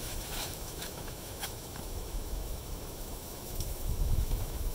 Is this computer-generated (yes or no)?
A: yes